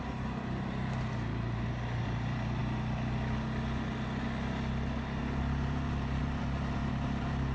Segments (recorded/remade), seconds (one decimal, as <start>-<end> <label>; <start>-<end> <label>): 0.0-2.6 remade; 2.6-5.2 recorded; 5.2-7.5 remade